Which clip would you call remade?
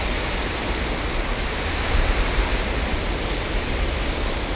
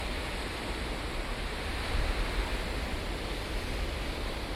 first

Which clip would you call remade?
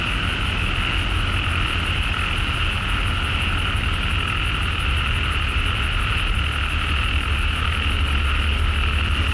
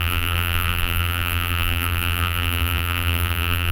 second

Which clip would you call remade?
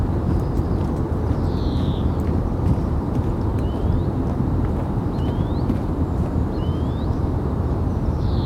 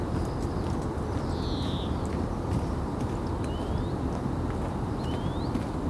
first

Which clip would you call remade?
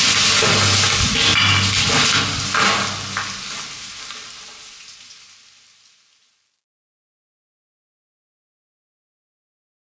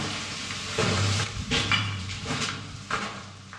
second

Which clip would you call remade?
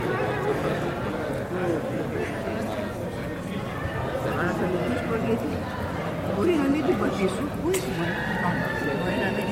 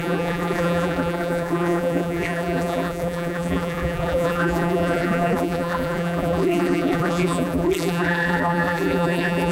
second